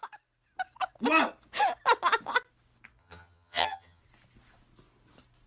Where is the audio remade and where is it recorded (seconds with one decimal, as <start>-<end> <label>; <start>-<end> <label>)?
0.0-3.0 recorded; 3.0-4.0 remade; 4.0-5.5 recorded